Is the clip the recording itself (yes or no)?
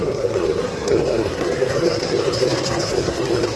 no